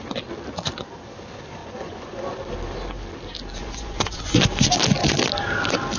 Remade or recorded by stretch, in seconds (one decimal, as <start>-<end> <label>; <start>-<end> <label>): 0.0-1.6 recorded; 1.6-2.2 remade; 2.2-3.6 recorded; 3.6-4.4 remade; 4.4-6.0 recorded